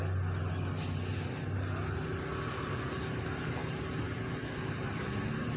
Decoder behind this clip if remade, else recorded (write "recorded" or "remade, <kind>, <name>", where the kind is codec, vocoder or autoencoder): recorded